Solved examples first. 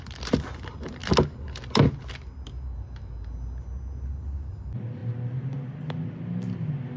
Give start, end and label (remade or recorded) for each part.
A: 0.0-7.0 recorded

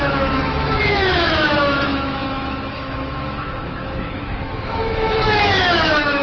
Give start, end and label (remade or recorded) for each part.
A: 0.0-6.2 remade

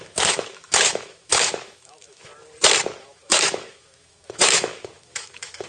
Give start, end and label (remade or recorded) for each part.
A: 0.0-2.3 remade; 2.3-3.0 recorded; 3.0-5.7 remade

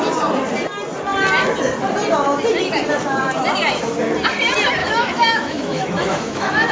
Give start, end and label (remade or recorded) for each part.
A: 0.0-4.8 recorded; 4.8-6.7 remade

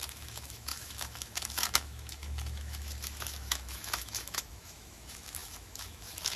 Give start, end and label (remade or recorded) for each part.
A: 0.0-6.4 remade

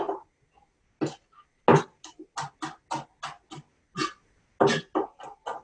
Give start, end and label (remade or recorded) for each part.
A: 0.0-5.6 recorded

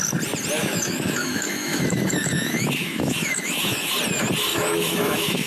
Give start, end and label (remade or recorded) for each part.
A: 0.0-0.6 recorded; 0.6-3.9 remade; 3.9-4.5 recorded; 4.5-5.5 remade

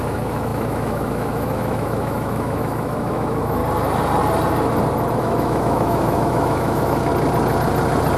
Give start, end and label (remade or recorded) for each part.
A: 0.0-3.6 remade; 3.6-5.2 recorded; 5.2-7.1 remade; 7.1-8.2 recorded